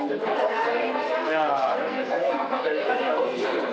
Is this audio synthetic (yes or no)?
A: yes